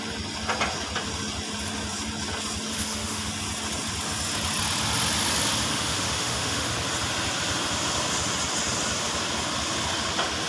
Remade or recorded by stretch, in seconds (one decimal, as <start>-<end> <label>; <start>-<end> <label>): 0.0-2.7 recorded; 2.7-3.3 remade; 3.3-5.7 recorded; 5.7-6.7 remade; 6.7-10.5 recorded